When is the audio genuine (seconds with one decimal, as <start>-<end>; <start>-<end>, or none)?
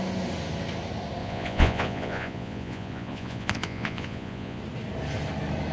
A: 0.0-1.2; 4.6-5.7